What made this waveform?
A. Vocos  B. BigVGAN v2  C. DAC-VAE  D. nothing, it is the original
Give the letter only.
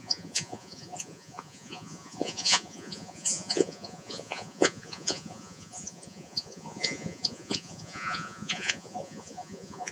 A